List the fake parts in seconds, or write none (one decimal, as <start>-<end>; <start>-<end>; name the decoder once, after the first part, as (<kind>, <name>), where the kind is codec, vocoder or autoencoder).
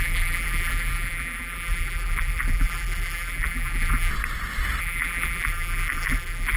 0.0-4.1 (vocoder, BigVGAN v2); 4.8-6.6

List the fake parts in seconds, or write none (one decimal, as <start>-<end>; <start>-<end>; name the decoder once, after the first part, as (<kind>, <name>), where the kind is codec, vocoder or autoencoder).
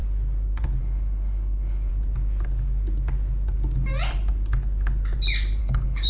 0.8-1.9 (codec, HILCodec); 5.6-6.1